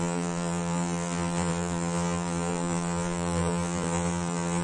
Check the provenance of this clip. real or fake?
fake